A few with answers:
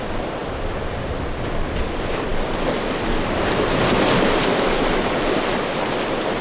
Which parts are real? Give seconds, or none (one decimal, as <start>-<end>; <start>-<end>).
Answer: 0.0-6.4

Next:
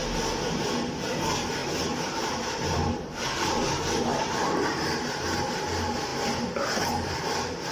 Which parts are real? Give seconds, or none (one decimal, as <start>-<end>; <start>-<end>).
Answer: 0.0-1.6; 3.5-4.1; 5.6-7.7

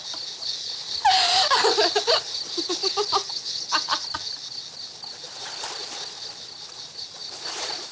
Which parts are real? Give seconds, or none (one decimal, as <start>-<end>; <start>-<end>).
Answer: 0.0-0.8; 1.8-7.2

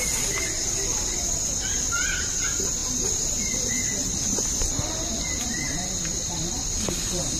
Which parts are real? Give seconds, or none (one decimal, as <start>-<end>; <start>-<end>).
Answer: 0.0-7.4

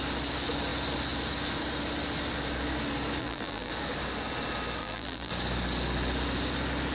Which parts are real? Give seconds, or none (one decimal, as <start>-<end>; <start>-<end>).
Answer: 0.0-3.2; 3.7-4.8; 5.3-6.9

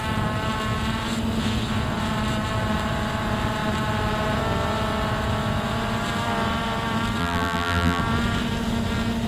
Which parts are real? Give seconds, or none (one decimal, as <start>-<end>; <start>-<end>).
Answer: 0.0-7.2; 8.0-9.3

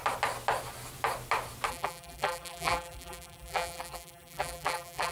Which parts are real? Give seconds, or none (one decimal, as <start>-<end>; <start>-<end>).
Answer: 0.0-1.7

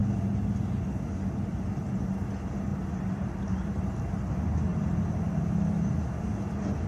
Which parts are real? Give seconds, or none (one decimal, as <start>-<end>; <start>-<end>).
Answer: 1.9-2.7; 4.0-4.7; 6.2-6.9